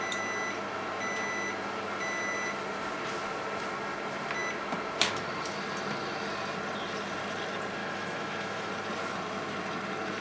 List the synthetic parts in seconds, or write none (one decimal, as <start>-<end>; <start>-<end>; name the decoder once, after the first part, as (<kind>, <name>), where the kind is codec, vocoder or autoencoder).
7.8-8.7 (autoencoder, DAC-VAE)